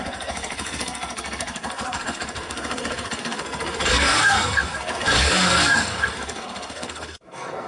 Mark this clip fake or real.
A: fake